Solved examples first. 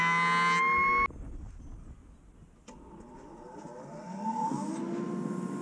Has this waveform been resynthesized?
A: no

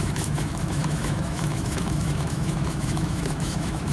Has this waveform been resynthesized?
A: yes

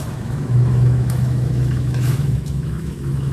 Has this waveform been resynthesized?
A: yes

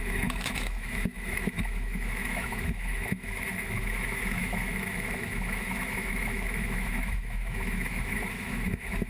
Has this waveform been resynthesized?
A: yes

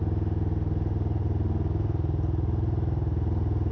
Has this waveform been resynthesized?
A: no